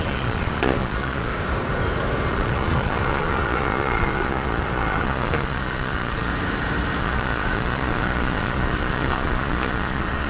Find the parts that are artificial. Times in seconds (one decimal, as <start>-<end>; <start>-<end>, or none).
0.0-1.3; 2.3-6.3; 7.0-10.3